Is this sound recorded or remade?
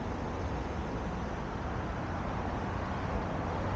recorded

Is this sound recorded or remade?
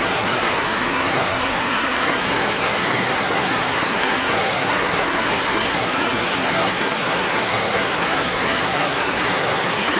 remade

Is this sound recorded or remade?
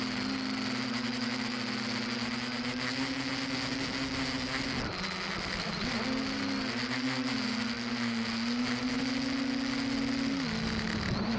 recorded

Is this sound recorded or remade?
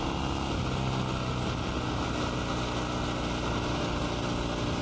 recorded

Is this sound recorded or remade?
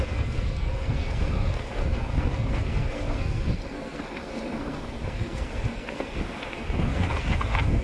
remade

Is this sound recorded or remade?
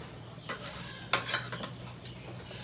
recorded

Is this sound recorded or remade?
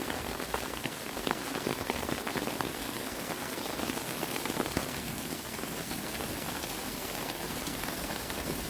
remade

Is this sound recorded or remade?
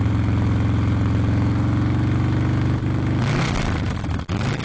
recorded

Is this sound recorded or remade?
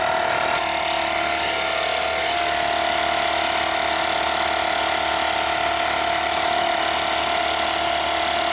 recorded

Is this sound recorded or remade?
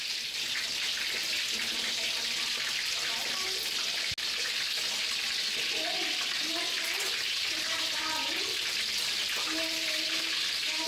recorded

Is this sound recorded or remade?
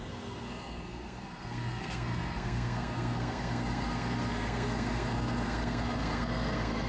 remade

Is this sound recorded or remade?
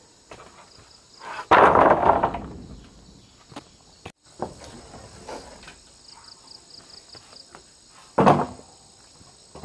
recorded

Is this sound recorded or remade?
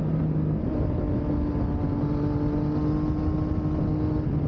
recorded